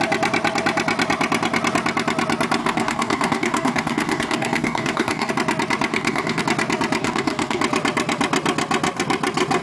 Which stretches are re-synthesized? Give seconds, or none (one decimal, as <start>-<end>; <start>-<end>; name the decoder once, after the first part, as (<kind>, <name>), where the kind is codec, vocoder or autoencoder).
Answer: 2.6-5.3 (codec, DAC); 5.9-6.4; 7.0-7.6